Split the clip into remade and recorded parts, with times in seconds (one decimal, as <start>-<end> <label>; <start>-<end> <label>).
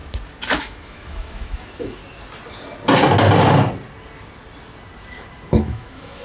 0.0-0.6 recorded; 0.6-2.0 remade; 2.0-5.5 recorded; 5.5-6.2 remade